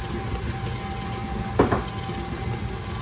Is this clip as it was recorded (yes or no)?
yes